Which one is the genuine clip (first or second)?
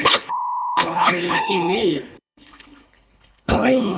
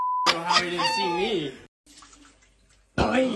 second